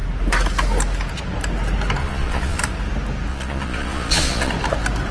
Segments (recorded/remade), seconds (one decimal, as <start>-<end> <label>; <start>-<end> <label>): 0.0-2.0 recorded; 2.0-2.6 remade; 2.6-3.3 recorded; 3.3-4.5 remade; 4.5-5.1 recorded